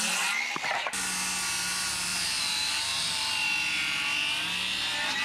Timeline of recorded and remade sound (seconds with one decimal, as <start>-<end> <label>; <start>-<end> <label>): 0.0-2.1 recorded; 2.1-3.2 remade; 3.2-5.2 recorded